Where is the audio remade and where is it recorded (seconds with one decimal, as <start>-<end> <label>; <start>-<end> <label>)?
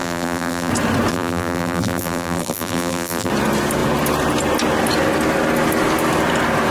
0.0-0.7 remade; 0.7-1.1 recorded; 1.1-3.3 remade; 3.3-6.7 recorded